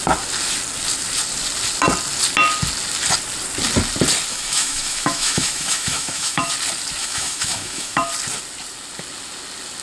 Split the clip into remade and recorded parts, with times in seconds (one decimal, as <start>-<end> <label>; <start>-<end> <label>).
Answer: 0.0-4.3 recorded; 4.3-6.5 remade; 6.5-7.0 recorded; 7.0-8.1 remade; 8.1-9.8 recorded

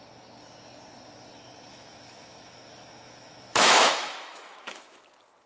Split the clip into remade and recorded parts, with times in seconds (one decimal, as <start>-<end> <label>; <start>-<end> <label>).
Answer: 0.0-1.7 recorded; 1.7-5.0 remade; 5.0-5.5 recorded

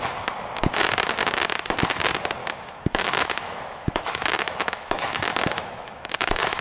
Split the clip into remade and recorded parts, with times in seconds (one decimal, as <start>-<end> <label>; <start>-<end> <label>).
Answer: 0.0-2.4 recorded; 2.4-6.6 remade

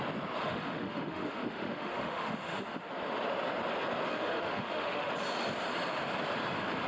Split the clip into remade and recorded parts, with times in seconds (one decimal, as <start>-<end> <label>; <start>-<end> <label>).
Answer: 0.0-0.4 recorded; 0.4-2.9 remade; 2.9-4.1 recorded; 4.1-5.1 remade; 5.1-6.9 recorded

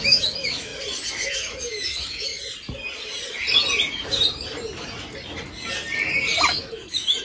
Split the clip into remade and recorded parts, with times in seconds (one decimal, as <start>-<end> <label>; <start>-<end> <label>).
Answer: 0.0-0.7 remade; 0.7-1.3 recorded; 1.3-2.3 remade; 2.3-6.6 recorded; 6.6-7.2 remade